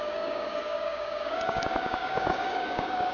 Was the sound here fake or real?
fake